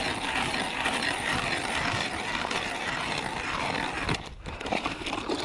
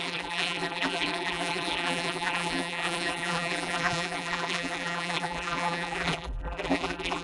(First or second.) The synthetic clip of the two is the second